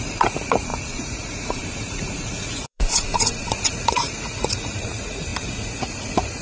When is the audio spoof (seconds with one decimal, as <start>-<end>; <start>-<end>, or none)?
0.0-6.4